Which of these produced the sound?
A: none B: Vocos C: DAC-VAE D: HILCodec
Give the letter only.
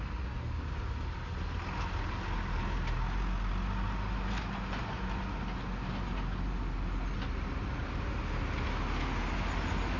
A